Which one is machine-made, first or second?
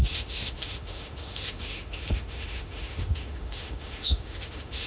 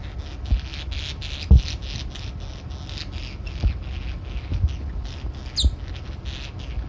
first